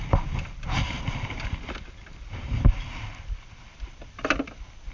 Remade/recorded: recorded